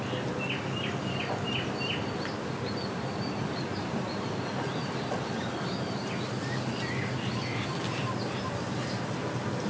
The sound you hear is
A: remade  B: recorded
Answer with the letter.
B